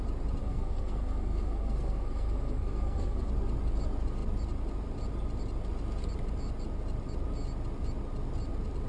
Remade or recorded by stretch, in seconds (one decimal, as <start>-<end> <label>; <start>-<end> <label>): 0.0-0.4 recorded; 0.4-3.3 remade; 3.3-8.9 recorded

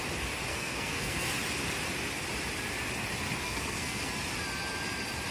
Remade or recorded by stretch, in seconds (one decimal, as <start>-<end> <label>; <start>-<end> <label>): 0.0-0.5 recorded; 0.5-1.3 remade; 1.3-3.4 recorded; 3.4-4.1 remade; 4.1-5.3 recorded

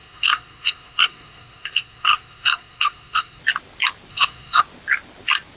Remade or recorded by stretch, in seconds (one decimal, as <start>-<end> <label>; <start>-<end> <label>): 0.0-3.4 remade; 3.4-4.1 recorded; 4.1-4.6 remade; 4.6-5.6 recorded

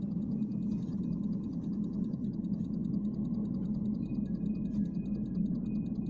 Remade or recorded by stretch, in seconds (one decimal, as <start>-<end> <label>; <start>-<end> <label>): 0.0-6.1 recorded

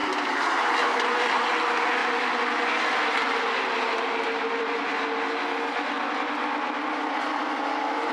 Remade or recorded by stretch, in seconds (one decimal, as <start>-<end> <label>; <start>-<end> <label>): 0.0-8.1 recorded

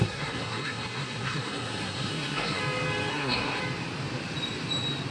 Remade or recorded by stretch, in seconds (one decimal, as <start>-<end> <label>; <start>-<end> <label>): 0.0-2.6 remade; 2.6-3.1 recorded; 3.1-3.6 remade; 3.6-5.1 recorded